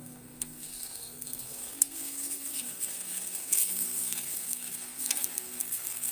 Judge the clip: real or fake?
fake